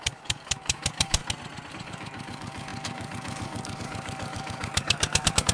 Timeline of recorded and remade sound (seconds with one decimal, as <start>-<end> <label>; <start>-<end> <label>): 0.0-1.2 remade; 1.2-1.7 recorded; 1.7-5.5 remade